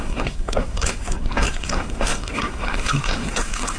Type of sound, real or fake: fake